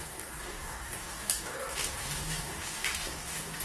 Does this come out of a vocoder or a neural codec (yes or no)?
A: yes